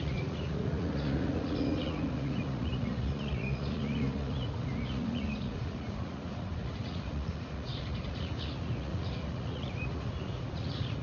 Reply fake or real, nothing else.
fake